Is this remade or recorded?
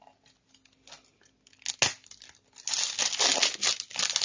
recorded